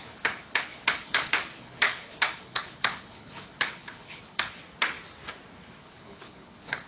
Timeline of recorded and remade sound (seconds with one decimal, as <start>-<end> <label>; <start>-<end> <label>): 0.0-4.6 remade; 4.6-5.8 recorded; 5.8-6.9 remade

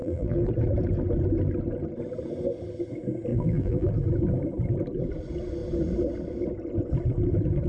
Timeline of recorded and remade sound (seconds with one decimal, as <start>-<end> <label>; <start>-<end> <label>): 0.0-0.5 remade; 0.5-3.3 recorded; 3.3-3.9 remade; 3.9-7.7 recorded

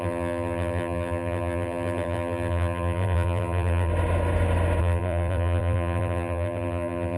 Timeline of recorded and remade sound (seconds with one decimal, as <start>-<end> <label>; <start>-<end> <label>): 0.0-3.9 remade; 3.9-4.8 recorded; 4.8-7.2 remade

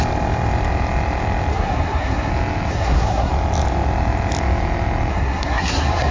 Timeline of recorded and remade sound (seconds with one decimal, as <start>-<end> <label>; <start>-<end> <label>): 0.0-1.5 recorded; 1.5-2.3 remade; 2.3-2.7 recorded; 2.7-3.3 remade; 3.3-5.1 recorded; 5.1-6.1 remade

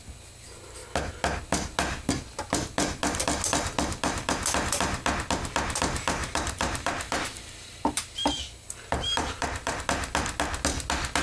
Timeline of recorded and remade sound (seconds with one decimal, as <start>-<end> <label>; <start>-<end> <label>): 0.0-6.2 recorded; 6.2-9.8 remade; 9.8-11.2 recorded

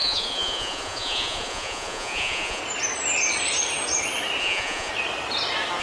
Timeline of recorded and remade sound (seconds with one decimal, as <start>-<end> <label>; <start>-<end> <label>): 0.0-2.6 remade; 2.6-4.4 recorded; 4.4-4.9 remade; 4.9-5.8 recorded